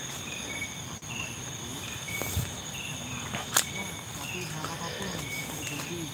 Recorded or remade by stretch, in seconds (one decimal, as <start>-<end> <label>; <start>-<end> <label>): 0.0-1.7 recorded; 1.7-3.7 remade; 3.7-6.1 recorded